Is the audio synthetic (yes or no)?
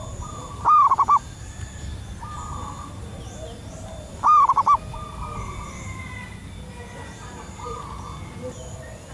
no